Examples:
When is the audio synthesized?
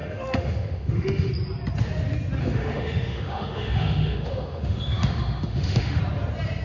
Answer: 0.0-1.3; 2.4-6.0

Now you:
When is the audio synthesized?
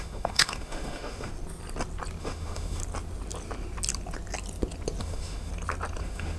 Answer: 0.0-1.3; 2.2-2.8; 5.0-5.5; 6.0-6.4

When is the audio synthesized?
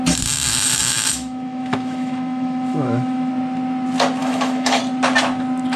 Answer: 0.5-3.3; 4.2-4.8